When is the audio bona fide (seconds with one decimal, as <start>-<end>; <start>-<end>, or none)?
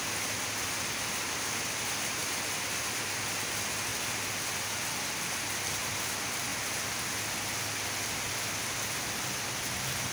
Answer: 0.0-10.1